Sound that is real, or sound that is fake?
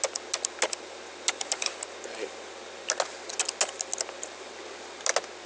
real